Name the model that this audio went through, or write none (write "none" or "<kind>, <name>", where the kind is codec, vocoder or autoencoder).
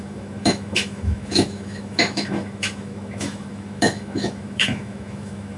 autoencoder, DAC-VAE